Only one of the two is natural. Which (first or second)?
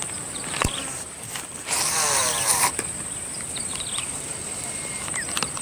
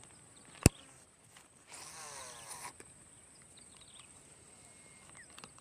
second